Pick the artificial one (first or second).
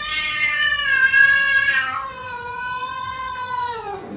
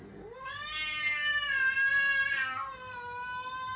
first